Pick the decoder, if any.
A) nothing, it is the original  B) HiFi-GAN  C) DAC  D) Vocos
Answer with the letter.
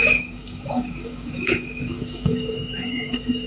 C